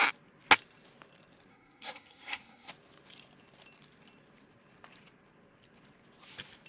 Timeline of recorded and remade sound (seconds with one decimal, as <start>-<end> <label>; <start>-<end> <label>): 0.0-1.5 recorded; 1.5-2.7 remade; 2.7-6.7 recorded